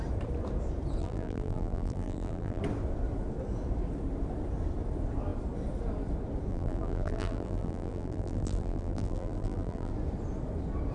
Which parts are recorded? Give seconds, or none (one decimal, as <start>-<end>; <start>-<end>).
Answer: 0.0-1.0; 2.6-6.5; 9.9-10.9